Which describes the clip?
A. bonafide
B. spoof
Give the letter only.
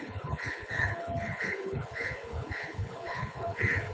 B